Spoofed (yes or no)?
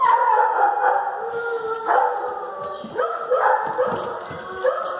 no